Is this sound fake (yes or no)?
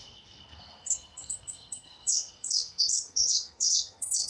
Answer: yes